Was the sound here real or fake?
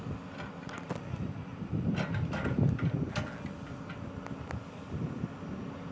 real